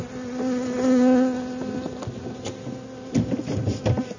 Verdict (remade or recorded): recorded